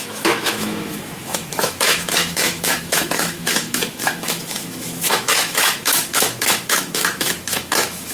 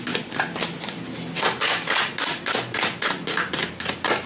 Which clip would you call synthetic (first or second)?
first